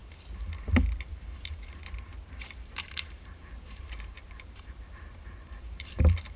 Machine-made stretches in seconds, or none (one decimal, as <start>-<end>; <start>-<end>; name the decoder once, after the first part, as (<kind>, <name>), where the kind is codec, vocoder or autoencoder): 0.9-6.4 (vocoder, BigVGAN v2)